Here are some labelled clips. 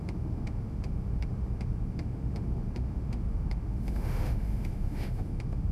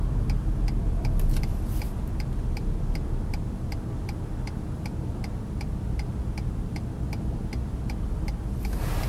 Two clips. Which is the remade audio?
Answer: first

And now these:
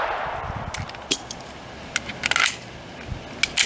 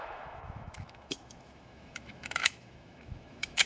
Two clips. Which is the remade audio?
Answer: second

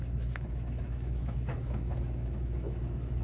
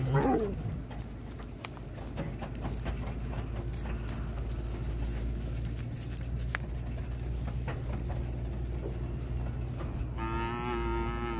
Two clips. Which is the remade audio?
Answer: first